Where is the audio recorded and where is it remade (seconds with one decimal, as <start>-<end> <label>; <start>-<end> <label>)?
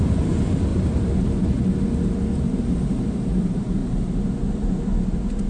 0.0-0.7 remade; 0.7-3.4 recorded; 3.4-3.8 remade; 3.8-4.6 recorded; 4.6-5.5 remade